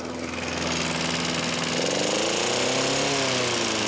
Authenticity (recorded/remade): recorded